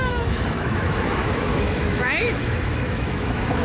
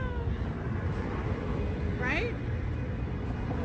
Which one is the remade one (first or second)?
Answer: first